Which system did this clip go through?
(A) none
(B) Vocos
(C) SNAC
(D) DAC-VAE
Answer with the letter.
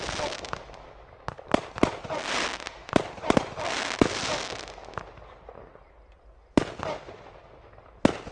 A